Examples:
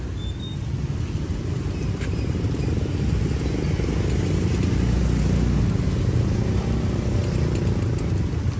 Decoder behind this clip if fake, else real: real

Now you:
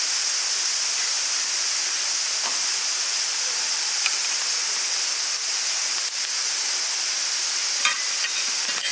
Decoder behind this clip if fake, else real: real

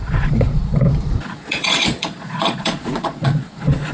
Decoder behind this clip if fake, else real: fake, vocoder, Vocos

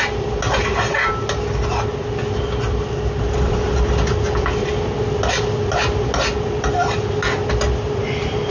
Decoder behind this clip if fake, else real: real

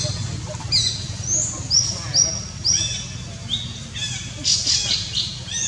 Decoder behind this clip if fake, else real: real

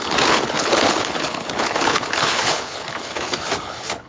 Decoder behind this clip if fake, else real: fake, codec, HILCodec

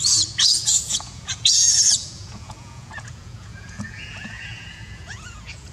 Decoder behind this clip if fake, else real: fake, vocoder, Vocos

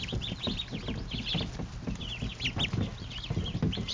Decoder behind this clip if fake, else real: real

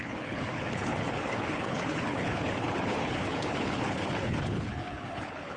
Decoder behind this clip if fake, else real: fake, codec, HILCodec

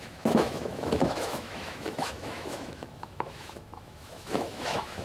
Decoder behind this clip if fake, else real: fake, autoencoder, DAC-VAE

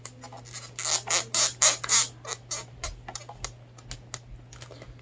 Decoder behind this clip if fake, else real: real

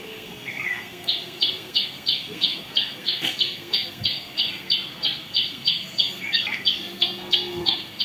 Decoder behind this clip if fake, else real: fake, codec, SNAC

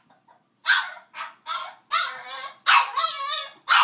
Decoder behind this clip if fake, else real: real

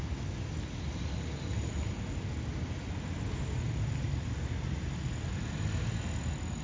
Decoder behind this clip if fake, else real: real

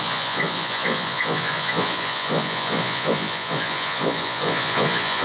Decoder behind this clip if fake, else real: fake, vocoder, Vocos